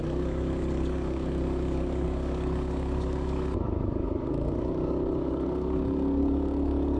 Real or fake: fake